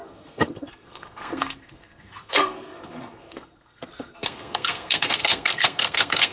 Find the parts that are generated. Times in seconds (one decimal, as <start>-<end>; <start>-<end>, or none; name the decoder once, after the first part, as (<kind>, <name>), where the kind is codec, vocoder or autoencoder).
0.0-6.3 (codec, SNAC)